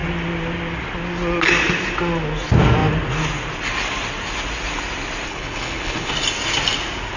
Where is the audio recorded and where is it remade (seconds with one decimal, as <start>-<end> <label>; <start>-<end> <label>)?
0.0-5.3 recorded; 5.3-6.1 remade; 6.1-7.2 recorded